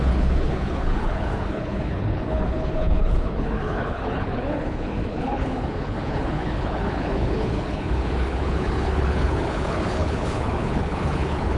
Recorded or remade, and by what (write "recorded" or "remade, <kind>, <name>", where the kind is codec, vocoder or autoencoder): remade, codec, HILCodec